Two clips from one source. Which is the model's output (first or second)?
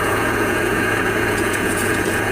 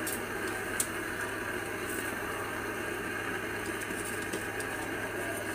first